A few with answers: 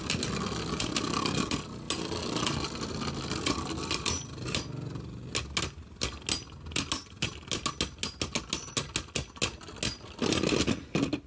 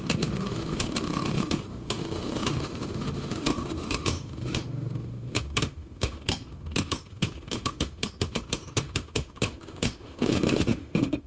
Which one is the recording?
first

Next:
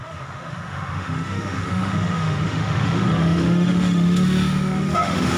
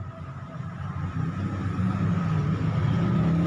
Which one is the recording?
second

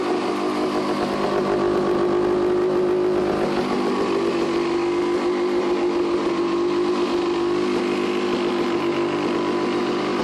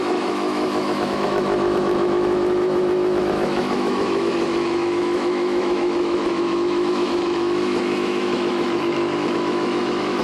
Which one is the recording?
first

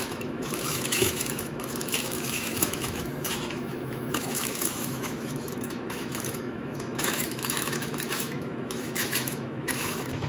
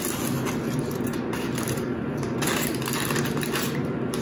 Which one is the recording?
second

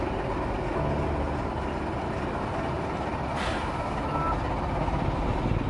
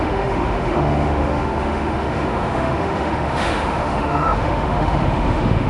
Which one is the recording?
first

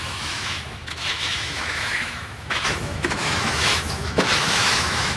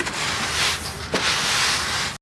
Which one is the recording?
second